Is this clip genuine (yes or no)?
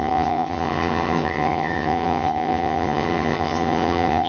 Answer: no